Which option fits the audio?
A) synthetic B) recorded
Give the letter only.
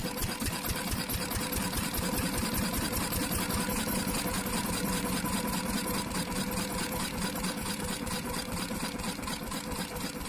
B